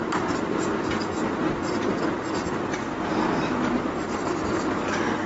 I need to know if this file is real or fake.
real